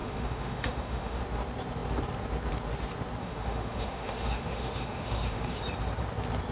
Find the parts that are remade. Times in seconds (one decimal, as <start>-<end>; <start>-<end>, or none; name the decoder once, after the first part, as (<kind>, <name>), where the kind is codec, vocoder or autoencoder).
0.0-1.2 (autoencoder, DAC-VAE); 3.2-5.6